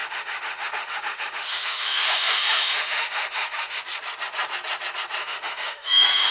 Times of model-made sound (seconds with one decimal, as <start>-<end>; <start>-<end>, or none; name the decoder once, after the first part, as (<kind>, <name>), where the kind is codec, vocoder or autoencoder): 0.0-3.8 (autoencoder, DAC-VAE); 5.2-6.3